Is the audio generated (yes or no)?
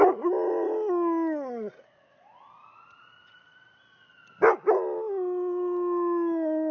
no